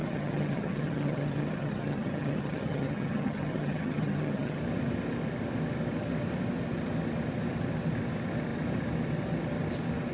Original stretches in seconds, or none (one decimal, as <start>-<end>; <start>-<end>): 4.6-10.1